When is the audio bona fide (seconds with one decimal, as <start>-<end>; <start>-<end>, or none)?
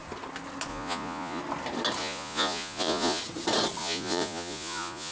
0.0-0.7; 1.4-2.0; 3.2-3.8